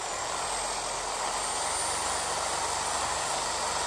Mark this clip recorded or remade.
recorded